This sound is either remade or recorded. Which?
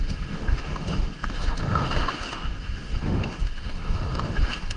remade